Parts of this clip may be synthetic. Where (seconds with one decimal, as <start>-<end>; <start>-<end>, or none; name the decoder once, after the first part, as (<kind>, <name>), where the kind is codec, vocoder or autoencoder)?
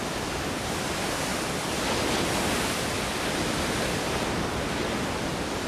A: none